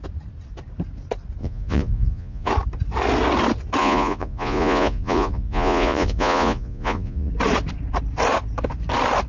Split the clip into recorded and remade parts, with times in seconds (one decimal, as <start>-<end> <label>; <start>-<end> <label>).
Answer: 0.0-1.4 recorded; 1.4-2.5 remade; 2.5-3.8 recorded; 3.8-7.3 remade; 7.3-9.3 recorded